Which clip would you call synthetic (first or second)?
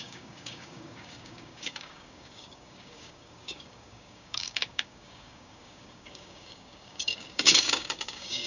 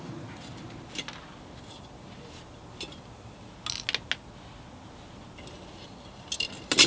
first